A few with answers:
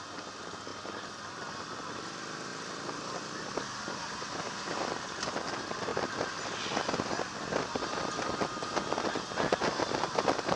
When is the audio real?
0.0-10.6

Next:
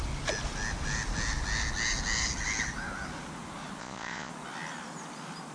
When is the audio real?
0.0-3.8; 4.3-5.5

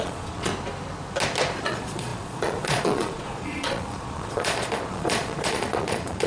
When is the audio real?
0.5-1.6